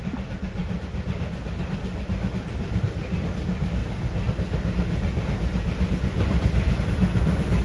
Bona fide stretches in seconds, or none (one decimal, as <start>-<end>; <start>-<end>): 3.8-6.8